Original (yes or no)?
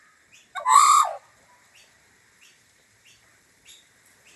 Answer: no